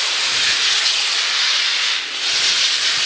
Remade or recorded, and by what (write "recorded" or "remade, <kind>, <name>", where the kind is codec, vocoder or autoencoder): recorded